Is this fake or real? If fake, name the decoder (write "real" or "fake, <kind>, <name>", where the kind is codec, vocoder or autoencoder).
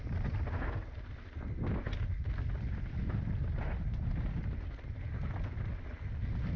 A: real